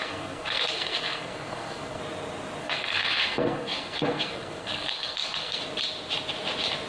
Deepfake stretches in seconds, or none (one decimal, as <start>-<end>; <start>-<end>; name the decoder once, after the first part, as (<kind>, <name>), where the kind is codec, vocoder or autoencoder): 0.0-2.0 (codec, SNAC); 2.6-5.6